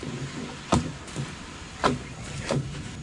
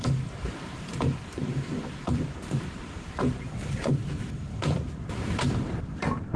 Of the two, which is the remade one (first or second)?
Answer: second